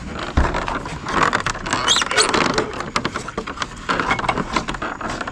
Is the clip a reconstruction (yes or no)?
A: no